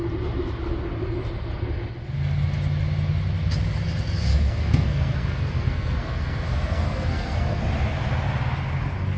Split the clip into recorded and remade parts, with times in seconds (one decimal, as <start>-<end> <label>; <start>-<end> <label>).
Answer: 0.0-4.3 recorded; 4.3-7.6 remade; 7.6-9.2 recorded